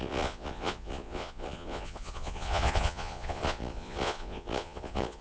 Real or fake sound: fake